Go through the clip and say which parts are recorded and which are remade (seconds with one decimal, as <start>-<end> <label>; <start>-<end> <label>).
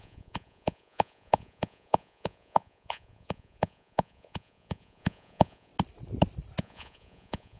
0.0-5.7 remade; 5.7-6.6 recorded; 6.6-7.6 remade